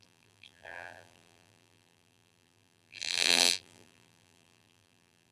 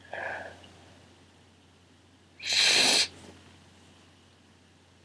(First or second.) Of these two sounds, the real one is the second